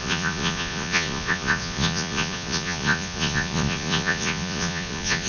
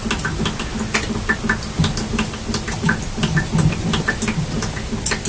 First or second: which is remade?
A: first